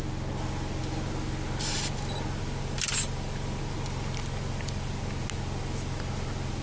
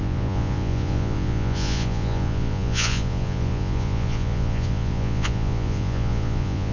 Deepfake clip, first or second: second